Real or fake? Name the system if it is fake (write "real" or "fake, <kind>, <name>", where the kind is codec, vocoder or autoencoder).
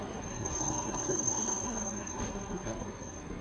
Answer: fake, codec, SNAC